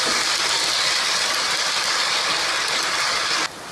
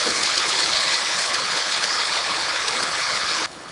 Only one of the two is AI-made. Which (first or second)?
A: second